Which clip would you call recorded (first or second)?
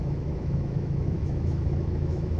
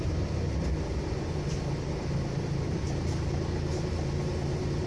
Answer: second